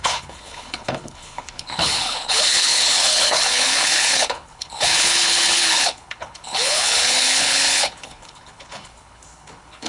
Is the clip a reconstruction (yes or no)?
yes